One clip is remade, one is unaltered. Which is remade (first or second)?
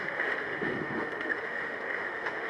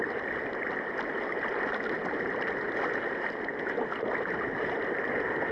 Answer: first